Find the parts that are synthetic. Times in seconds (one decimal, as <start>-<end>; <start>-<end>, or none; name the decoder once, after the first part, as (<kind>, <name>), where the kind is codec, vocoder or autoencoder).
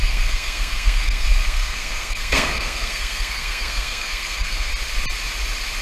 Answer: 0.0-4.7 (codec, SNAC)